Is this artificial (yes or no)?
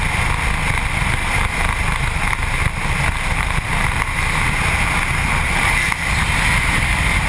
no